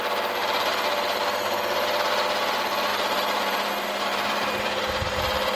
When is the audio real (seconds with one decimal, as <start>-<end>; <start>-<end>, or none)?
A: 0.0-0.4; 1.9-2.9

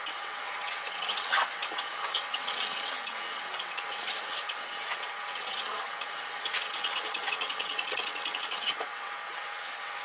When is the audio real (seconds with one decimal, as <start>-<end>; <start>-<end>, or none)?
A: none